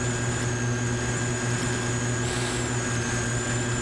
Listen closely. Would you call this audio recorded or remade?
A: recorded